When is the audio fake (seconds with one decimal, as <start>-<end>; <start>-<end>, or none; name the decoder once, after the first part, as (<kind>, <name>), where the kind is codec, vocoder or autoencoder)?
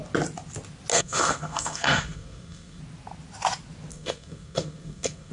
0.9-2.8 (codec, SNAC); 3.9-5.3